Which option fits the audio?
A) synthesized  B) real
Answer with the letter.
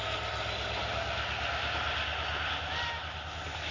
B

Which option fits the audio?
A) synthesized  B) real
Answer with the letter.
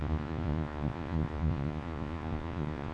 A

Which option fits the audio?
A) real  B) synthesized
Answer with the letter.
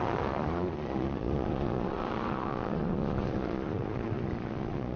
B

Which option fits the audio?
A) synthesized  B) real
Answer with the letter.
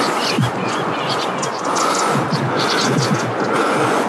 A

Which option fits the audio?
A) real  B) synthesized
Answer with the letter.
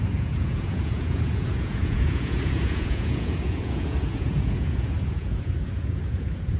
B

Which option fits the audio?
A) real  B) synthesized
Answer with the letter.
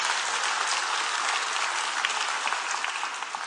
A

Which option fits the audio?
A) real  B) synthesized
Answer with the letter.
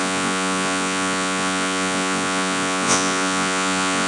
B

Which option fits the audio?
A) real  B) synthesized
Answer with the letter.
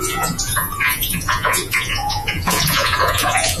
B